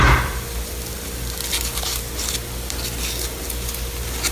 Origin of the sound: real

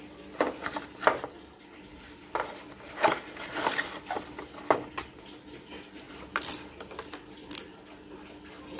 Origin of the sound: real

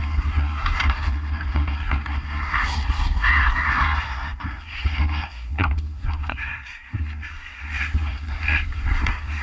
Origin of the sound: fake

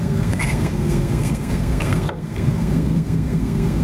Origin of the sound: fake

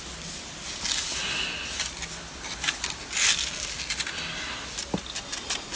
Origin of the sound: real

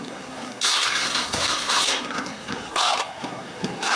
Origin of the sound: fake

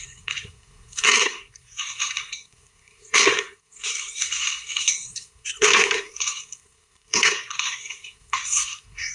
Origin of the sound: fake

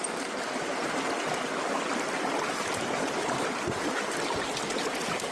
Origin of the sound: real